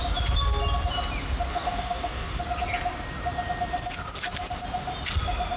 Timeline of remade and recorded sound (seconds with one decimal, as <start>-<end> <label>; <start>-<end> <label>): 0.0-1.5 recorded; 1.5-2.4 remade; 2.4-5.6 recorded